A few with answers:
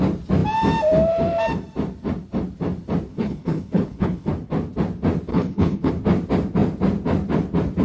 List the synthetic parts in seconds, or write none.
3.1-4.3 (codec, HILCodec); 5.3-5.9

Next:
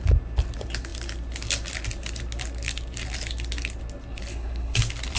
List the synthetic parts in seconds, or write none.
4.3-4.8 (codec, HILCodec)

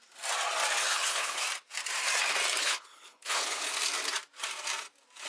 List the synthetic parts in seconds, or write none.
0.8-1.4 (codec, HILCodec); 2.6-3.7

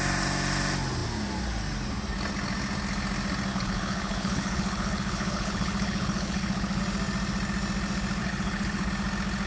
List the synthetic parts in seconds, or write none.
3.5-6.8 (codec, HILCodec); 8.2-8.9